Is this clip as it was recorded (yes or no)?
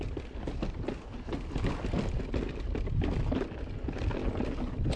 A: yes